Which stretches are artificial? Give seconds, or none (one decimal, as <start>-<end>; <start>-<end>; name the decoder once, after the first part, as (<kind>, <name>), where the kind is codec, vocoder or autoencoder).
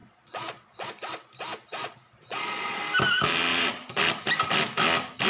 0.0-0.9 (vocoder, Vocos); 1.8-2.8; 3.5-4.0